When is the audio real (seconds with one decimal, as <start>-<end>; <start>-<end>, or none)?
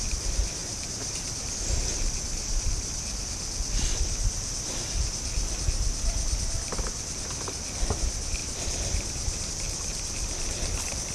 0.0-0.6; 1.5-8.4; 9.5-11.1